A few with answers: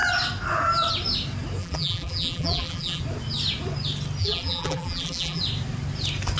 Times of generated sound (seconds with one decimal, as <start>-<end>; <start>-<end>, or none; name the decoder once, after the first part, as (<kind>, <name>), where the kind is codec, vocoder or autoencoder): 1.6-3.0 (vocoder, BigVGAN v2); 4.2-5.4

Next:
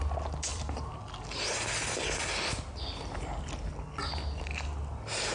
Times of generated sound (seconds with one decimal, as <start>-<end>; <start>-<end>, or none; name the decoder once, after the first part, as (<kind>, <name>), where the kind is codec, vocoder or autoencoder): 0.5-1.0 (vocoder, BigVGAN v2)

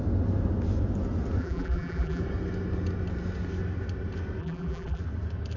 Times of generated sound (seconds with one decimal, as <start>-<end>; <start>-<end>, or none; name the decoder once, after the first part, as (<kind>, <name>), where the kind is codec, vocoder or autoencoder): 1.4-2.2 (vocoder, BigVGAN v2); 4.4-5.0

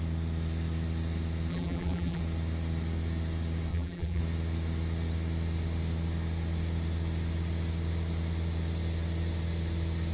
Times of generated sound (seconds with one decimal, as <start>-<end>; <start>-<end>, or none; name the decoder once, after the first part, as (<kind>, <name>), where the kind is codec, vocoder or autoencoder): 1.5-2.2 (vocoder, BigVGAN v2); 3.7-4.2

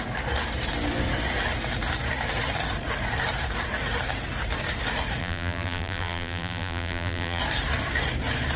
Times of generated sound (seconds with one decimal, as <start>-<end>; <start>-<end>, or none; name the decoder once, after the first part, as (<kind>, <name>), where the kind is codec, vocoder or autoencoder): 5.2-7.4 (vocoder, BigVGAN v2)